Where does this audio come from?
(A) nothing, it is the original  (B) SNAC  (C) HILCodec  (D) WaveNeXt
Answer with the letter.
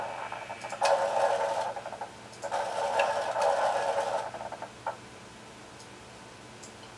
A